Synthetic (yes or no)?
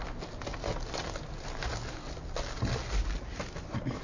no